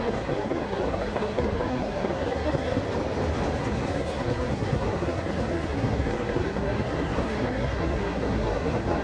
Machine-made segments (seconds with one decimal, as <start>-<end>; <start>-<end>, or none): 0.0-2.8; 3.6-9.0